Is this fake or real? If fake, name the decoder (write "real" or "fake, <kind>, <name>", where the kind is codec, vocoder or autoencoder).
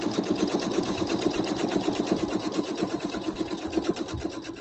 real